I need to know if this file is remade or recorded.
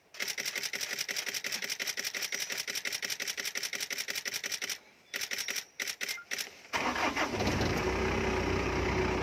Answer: recorded